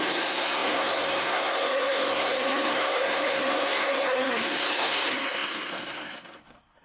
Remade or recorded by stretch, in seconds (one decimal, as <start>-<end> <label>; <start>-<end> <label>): 0.0-6.8 remade